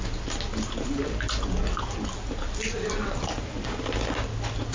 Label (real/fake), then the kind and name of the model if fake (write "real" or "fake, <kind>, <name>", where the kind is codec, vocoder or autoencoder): real